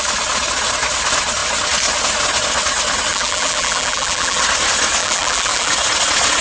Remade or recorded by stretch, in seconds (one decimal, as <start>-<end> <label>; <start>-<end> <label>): 0.0-3.1 recorded; 3.1-4.4 remade; 4.4-5.0 recorded; 5.0-5.7 remade; 5.7-6.4 recorded